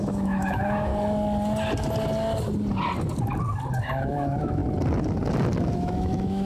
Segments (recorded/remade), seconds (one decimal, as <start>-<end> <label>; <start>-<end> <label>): 0.0-0.9 remade; 0.9-3.8 recorded; 3.8-4.6 remade; 4.6-5.6 recorded; 5.6-6.5 remade